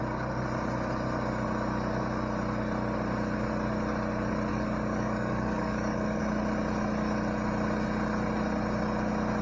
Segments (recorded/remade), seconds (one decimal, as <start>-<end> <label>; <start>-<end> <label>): 0.0-4.5 recorded; 4.5-6.2 remade; 6.2-9.4 recorded